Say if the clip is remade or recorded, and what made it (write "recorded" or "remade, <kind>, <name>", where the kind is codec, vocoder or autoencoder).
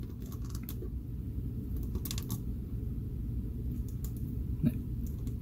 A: recorded